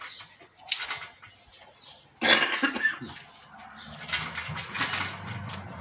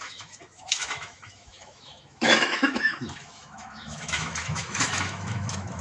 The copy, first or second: second